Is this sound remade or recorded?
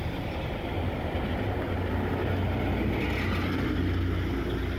recorded